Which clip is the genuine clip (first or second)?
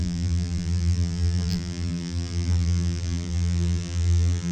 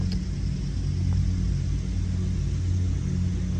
second